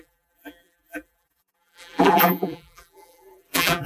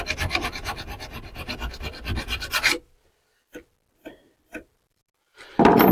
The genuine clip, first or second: second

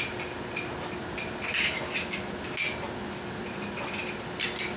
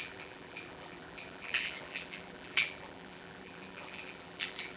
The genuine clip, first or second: first